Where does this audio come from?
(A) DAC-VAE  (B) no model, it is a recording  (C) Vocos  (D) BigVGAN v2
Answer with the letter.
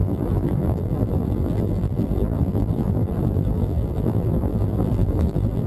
D